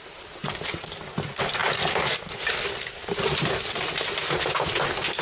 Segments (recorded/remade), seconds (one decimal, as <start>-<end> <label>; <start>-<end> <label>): 0.0-5.2 recorded